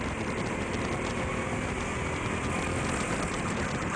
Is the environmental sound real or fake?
real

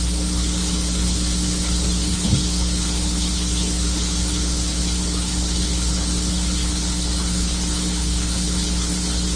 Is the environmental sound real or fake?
fake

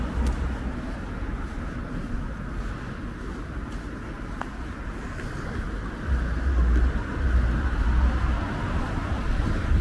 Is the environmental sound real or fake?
real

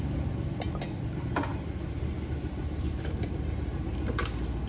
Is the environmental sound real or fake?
real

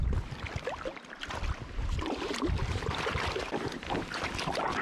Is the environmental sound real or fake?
real